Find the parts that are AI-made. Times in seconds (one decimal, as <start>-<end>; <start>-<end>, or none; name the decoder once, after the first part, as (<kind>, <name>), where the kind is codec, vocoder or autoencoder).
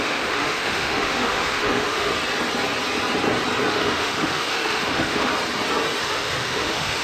0.0-2.1 (autoencoder, DAC-VAE); 3.7-5.3; 6.0-7.0